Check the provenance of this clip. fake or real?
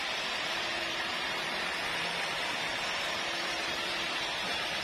fake